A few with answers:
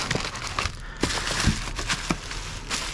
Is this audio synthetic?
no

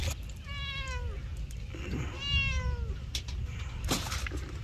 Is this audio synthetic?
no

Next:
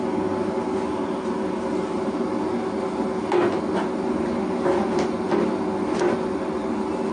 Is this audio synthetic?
no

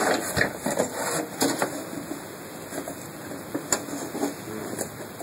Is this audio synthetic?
no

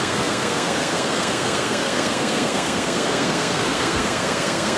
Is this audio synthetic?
yes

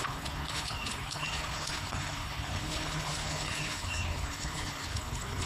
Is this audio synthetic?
yes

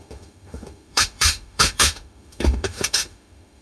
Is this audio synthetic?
yes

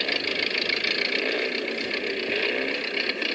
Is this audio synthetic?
no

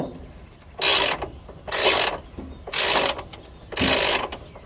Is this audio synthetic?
no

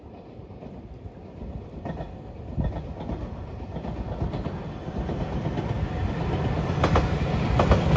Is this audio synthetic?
no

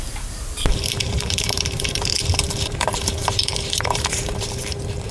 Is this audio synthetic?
yes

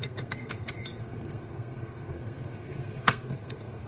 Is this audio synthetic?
yes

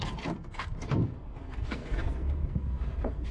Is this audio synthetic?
yes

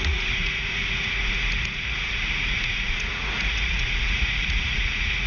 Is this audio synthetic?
yes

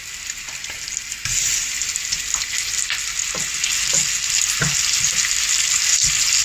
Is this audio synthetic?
no